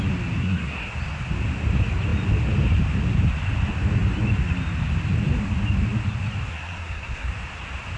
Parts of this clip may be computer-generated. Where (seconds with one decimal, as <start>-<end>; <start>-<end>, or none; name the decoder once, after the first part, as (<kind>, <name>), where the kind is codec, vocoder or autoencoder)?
0.4-0.9 (codec, SNAC); 6.5-7.3